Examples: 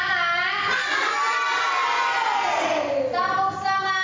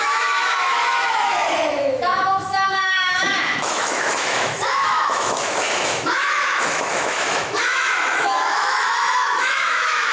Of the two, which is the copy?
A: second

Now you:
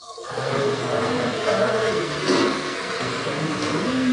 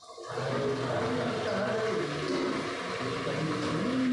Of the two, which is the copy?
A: first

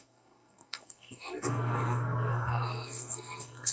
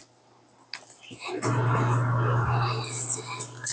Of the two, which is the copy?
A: first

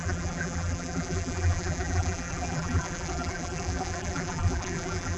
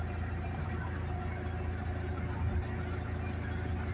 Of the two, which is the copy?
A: first